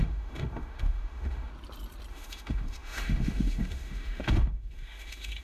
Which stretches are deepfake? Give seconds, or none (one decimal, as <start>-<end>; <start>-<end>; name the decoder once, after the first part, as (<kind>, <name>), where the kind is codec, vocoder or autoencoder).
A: 0.0-1.5 (autoencoder, DAC-VAE); 2.1-5.4